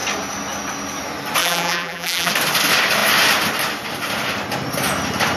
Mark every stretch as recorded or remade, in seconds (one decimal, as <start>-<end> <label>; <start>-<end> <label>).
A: 0.0-1.4 recorded; 1.4-2.3 remade; 2.3-5.4 recorded